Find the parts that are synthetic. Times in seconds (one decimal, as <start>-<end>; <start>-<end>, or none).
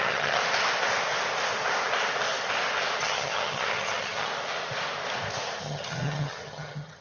0.0-0.4; 3.0-4.3; 5.6-7.0